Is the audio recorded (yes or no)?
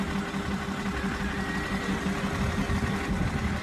yes